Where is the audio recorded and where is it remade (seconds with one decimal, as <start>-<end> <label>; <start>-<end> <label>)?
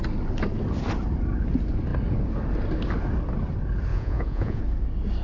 0.0-3.9 recorded; 3.9-4.6 remade; 4.6-5.2 recorded